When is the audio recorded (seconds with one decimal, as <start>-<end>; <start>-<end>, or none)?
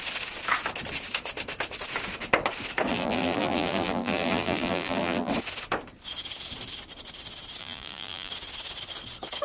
0.0-2.9; 5.3-7.6; 8.3-9.4